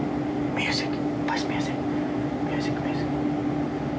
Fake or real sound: real